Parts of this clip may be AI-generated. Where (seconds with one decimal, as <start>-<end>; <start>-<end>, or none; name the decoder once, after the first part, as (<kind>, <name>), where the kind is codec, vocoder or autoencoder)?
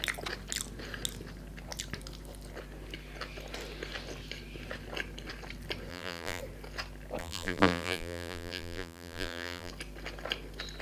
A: 5.9-6.4 (vocoder, BigVGAN v2); 7.2-9.7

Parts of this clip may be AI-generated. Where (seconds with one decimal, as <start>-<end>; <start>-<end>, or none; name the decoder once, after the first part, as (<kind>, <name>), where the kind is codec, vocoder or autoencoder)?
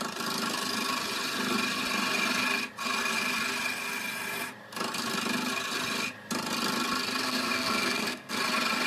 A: 7.2-8.4 (codec, SNAC)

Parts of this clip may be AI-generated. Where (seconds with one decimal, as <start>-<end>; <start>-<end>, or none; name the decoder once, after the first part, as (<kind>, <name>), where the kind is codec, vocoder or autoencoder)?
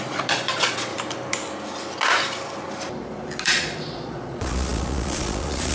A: 0.0-0.9 (vocoder, Vocos); 3.4-5.7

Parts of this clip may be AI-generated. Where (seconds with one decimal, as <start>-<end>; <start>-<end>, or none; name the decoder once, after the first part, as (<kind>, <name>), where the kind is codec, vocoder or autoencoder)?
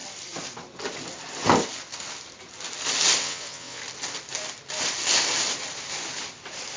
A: 3.2-3.8 (vocoder, WaveNeXt)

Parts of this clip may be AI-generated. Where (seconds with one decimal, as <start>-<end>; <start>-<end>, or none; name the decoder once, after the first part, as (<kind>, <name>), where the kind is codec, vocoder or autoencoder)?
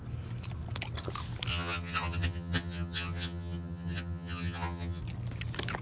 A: 1.5-5.0 (vocoder, HiFi-GAN)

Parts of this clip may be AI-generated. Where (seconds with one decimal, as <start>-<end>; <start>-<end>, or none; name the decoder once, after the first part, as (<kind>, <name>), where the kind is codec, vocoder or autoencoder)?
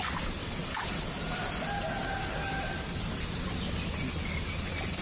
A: none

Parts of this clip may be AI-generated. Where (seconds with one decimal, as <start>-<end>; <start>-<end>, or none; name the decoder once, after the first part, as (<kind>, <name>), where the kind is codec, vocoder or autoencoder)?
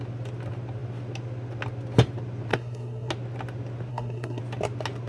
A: 2.5-3.1 (codec, SNAC); 3.9-4.4